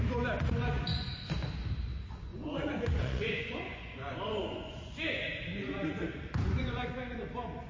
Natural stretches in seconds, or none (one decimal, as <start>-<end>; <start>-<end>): 0.0-0.9; 1.5-2.3; 6.9-7.7